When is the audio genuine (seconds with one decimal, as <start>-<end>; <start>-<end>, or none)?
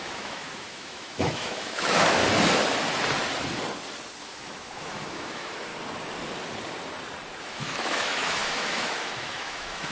2.2-4.2; 5.7-7.4